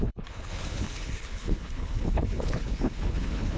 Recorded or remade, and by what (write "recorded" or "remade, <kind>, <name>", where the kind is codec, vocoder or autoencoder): remade, codec, HILCodec